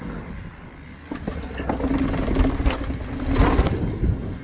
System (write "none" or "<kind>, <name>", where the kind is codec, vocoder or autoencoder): none